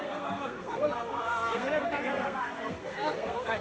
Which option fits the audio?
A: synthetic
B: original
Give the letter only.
A